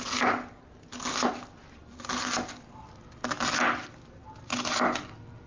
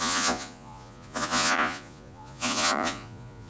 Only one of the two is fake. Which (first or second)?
second